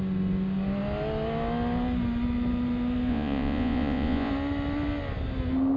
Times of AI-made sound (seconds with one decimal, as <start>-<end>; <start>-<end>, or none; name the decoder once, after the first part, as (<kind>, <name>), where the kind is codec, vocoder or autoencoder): 3.1-4.3 (vocoder, Vocos)